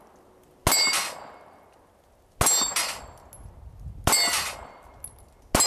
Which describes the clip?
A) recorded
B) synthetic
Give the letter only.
A